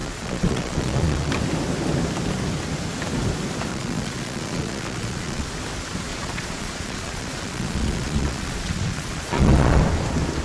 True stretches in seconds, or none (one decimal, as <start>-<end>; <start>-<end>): 1.3-3.7; 5.5-6.1; 9.8-10.4